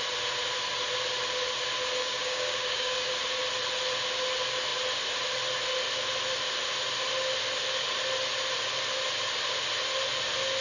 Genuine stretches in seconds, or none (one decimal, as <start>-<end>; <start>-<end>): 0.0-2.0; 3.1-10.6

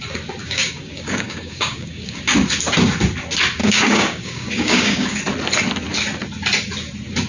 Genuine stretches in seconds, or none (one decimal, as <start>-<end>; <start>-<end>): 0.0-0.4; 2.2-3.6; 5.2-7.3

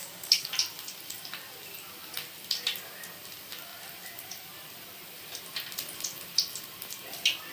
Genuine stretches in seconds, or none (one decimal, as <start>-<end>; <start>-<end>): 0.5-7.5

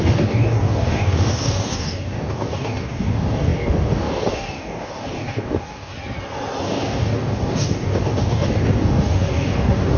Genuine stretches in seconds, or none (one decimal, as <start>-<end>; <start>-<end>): 5.9-6.6

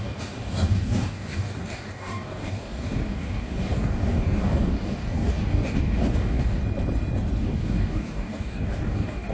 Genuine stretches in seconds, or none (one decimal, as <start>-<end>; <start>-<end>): 6.6-7.4

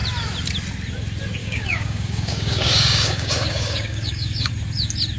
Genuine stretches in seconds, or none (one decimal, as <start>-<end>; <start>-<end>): 0.0-1.4; 4.5-5.2

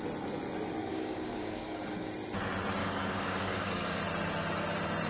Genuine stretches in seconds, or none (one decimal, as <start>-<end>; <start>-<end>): 0.0-0.8; 2.1-2.8; 4.0-5.1